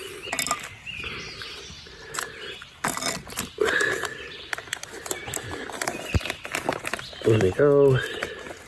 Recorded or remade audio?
recorded